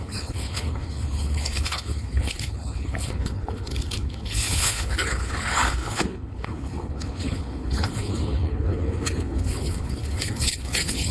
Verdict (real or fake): fake